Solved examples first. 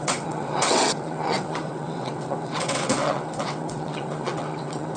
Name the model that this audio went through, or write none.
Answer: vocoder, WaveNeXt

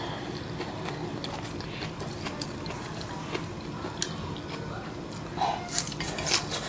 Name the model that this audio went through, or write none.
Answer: none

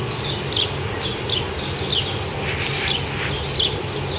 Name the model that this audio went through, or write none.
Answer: none